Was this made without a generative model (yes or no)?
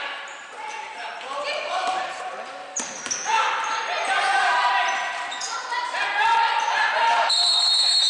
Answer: no